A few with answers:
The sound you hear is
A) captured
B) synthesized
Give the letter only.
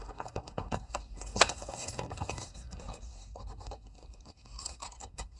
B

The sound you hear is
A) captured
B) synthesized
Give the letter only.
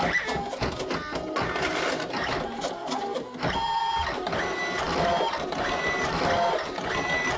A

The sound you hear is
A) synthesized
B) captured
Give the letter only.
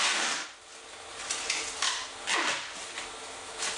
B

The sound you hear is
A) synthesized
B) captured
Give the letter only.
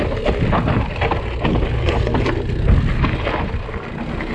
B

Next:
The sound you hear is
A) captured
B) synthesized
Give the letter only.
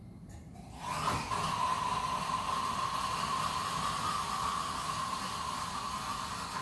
A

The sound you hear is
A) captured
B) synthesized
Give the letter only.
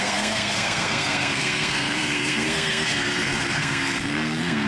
B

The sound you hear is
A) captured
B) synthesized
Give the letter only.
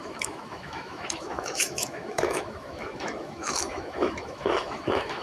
B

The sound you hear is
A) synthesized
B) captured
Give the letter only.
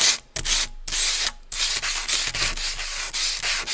B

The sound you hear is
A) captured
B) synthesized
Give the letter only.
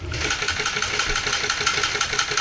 A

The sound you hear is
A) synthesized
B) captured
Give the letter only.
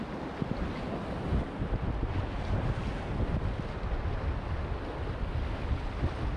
B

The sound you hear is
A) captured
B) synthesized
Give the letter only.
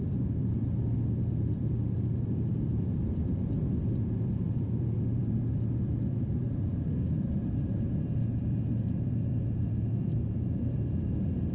B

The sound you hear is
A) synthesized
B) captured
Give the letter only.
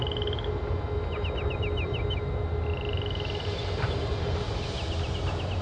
B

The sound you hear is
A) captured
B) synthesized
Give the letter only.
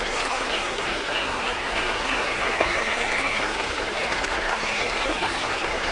B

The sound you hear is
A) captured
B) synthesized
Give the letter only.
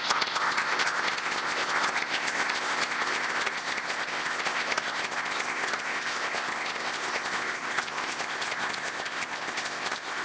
B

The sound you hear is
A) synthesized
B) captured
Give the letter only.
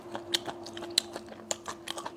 B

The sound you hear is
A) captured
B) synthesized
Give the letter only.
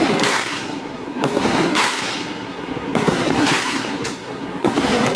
B